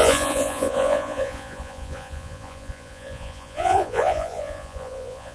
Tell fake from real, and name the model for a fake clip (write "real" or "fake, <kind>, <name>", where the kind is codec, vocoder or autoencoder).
fake, vocoder, Vocos